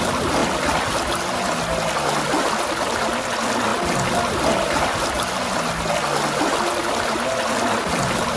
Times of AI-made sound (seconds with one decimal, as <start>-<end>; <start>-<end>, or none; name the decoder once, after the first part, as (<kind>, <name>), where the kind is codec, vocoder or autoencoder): none